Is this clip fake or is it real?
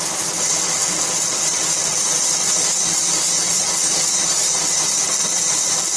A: real